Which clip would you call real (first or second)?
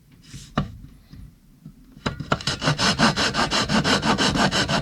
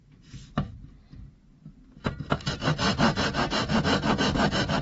second